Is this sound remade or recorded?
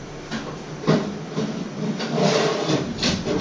remade